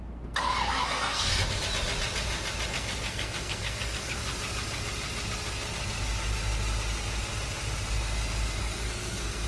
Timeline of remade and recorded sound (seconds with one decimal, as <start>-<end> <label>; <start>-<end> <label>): 0.0-1.3 remade; 1.3-2.7 recorded; 2.7-4.2 remade; 4.2-8.6 recorded; 8.6-9.5 remade